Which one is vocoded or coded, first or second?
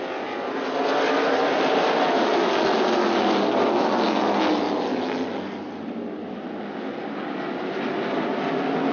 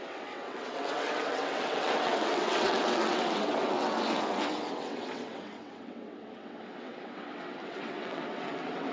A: second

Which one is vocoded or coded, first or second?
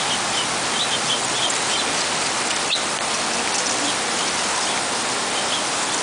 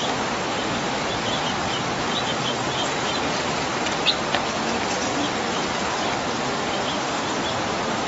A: second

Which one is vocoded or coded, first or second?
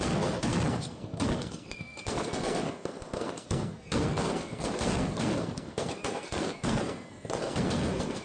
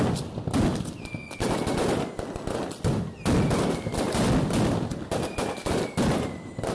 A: first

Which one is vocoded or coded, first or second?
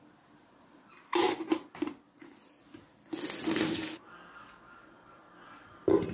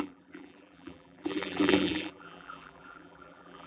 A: second